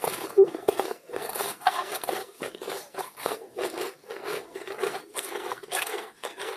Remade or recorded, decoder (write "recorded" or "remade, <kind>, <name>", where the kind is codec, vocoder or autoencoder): remade, codec, SNAC